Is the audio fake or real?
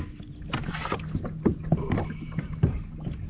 real